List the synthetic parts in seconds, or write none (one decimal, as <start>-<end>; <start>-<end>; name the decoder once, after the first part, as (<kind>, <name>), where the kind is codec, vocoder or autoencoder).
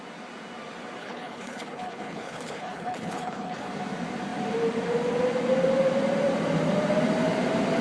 1.0-3.7 (codec, HILCodec)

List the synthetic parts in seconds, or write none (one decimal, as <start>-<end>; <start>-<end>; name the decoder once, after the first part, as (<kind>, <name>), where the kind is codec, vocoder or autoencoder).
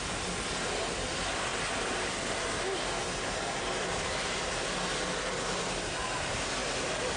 none